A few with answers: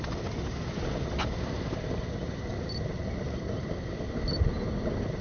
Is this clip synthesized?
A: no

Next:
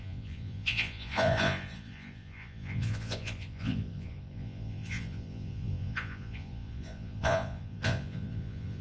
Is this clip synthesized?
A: yes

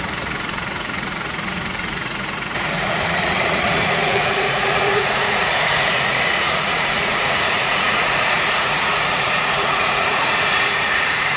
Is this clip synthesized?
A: yes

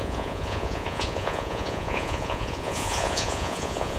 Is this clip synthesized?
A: yes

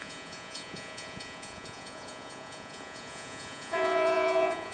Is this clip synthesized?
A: yes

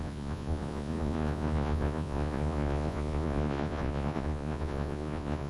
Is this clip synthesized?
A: yes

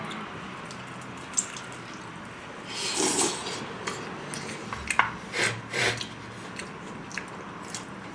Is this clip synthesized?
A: no